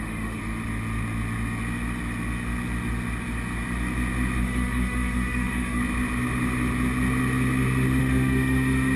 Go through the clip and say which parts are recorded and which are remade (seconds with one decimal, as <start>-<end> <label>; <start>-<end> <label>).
0.0-0.4 remade; 0.4-4.4 recorded; 4.4-5.8 remade; 5.8-8.0 recorded; 8.0-9.0 remade